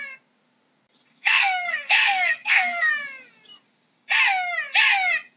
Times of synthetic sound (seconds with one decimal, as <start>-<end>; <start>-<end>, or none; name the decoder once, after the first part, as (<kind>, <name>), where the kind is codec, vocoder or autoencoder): 1.1-2.9 (codec, SNAC)

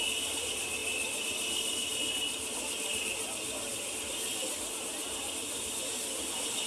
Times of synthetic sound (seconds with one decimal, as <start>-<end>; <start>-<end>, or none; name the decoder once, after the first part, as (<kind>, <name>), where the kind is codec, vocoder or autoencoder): none

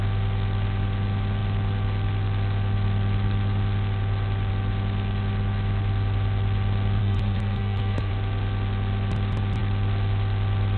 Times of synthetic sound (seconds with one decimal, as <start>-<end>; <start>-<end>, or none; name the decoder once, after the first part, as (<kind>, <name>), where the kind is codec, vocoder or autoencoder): 7.0-8.1 (codec, SNAC)

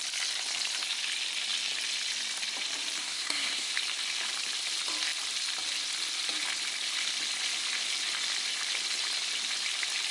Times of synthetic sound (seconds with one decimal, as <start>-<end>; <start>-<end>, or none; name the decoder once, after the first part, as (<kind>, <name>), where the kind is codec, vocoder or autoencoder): 3.0-3.7 (codec, SNAC)

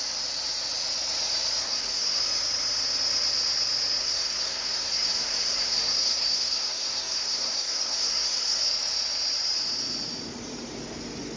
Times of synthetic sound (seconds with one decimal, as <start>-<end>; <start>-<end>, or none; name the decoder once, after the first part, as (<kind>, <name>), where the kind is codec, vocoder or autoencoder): 1.6-2.2 (codec, SNAC); 4.0-8.6

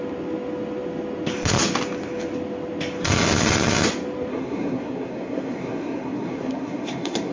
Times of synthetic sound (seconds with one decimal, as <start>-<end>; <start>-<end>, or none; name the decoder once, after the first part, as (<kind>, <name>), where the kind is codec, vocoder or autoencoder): 4.3-7.3 (codec, SNAC)